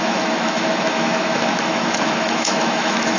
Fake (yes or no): yes